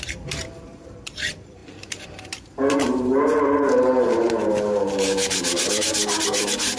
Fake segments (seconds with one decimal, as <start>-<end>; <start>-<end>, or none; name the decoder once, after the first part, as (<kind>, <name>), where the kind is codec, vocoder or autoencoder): 0.0-6.8 (vocoder, BigVGAN v2)